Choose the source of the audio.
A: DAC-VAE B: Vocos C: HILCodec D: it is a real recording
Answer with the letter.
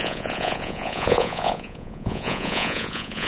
B